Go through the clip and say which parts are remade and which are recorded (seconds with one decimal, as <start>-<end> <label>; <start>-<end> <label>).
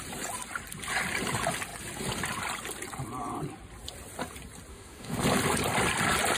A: 0.0-4.7 recorded; 4.7-5.2 remade; 5.2-6.4 recorded